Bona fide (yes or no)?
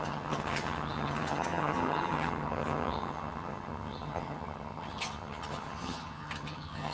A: no